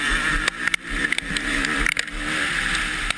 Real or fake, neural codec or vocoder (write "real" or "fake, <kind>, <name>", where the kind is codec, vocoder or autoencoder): real